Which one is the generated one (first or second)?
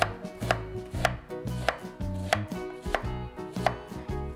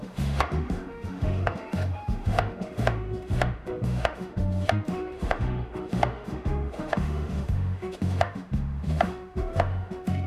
second